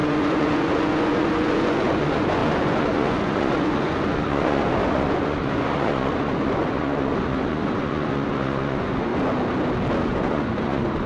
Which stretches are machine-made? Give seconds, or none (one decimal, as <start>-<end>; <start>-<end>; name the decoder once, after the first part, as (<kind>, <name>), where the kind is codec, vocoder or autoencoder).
0.0-9.1 (vocoder, Vocos); 10.0-11.1